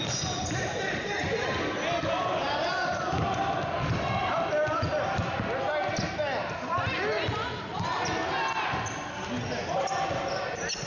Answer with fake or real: real